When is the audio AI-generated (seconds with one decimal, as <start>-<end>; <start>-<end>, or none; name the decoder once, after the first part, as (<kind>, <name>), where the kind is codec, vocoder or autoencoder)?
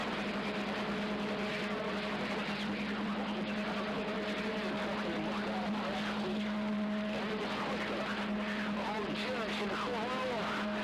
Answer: none